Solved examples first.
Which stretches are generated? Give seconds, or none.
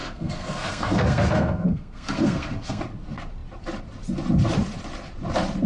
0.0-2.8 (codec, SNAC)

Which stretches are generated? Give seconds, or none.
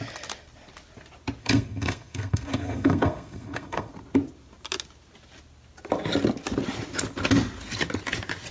1.4-3.9 (codec, SNAC)